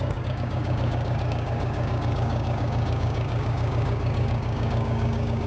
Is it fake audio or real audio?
fake